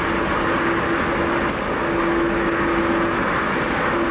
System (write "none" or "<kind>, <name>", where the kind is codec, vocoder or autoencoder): none